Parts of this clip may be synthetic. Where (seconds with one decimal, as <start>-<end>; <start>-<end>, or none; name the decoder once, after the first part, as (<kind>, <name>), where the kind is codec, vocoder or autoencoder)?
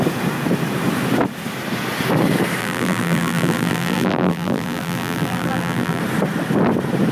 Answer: 2.6-6.0 (vocoder, BigVGAN v2)